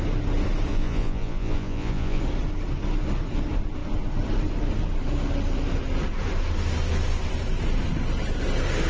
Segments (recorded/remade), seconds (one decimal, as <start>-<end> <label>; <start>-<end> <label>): 0.0-0.7 recorded; 0.7-2.2 remade; 2.2-8.9 recorded